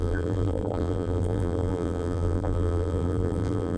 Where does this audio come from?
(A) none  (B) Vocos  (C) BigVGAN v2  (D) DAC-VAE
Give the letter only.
C